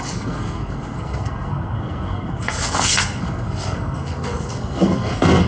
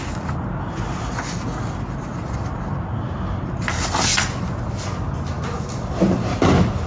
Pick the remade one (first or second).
first